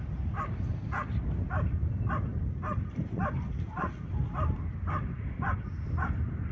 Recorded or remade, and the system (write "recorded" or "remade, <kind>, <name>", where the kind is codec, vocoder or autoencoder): recorded